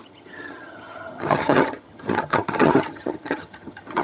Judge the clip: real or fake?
fake